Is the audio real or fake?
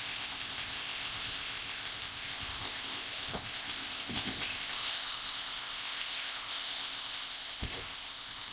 fake